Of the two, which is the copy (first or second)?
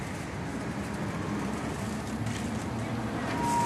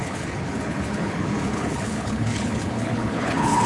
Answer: second